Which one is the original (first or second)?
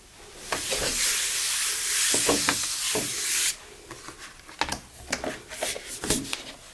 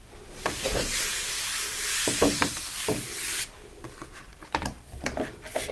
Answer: first